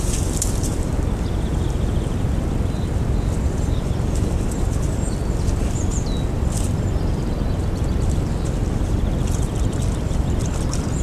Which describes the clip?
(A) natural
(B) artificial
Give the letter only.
A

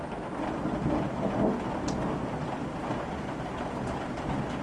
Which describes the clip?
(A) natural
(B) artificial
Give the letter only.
A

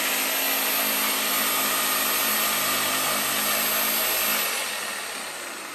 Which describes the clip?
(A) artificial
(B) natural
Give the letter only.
B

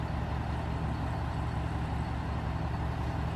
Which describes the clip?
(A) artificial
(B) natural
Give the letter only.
B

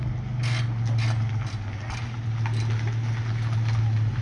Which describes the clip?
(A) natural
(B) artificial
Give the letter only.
A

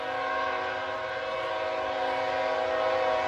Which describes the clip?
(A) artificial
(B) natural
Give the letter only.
B